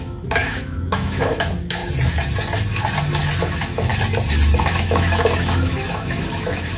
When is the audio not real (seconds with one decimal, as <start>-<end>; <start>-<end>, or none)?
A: 0.0-1.8; 3.4-3.9; 4.6-6.8

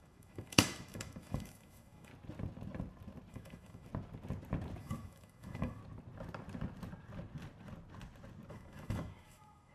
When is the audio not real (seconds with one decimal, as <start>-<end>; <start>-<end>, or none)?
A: 0.0-2.1; 3.3-3.9; 4.8-5.8; 8.5-9.7